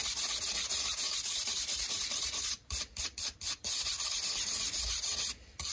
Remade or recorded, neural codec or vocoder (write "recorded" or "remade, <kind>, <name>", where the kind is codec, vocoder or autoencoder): remade, vocoder, BigVGAN v2